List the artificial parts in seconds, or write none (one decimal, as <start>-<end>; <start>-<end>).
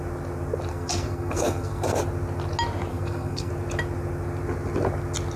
0.7-2.0; 2.9-3.5